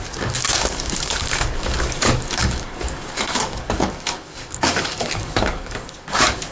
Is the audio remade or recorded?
remade